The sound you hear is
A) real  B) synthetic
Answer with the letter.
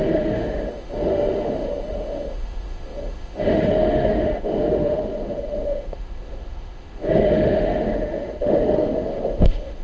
B